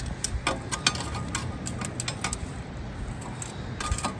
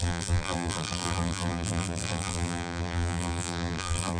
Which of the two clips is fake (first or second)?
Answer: second